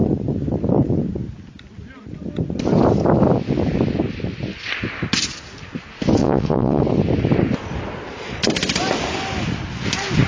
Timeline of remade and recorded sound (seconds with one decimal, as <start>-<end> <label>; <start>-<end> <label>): 0.0-6.2 recorded; 6.2-6.8 remade; 6.8-10.3 recorded